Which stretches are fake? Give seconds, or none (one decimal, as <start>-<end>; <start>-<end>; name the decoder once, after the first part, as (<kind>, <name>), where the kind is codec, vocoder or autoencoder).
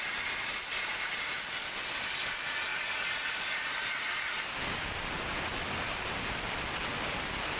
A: none